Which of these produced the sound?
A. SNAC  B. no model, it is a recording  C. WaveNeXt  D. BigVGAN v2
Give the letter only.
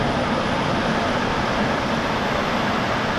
B